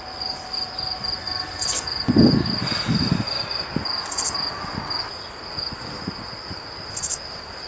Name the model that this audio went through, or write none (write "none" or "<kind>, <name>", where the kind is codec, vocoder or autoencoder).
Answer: none